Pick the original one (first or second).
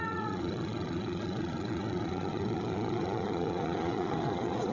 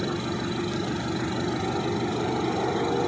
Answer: second